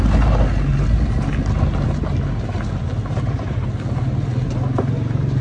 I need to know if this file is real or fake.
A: real